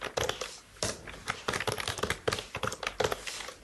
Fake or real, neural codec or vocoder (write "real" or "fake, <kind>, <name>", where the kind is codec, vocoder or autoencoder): real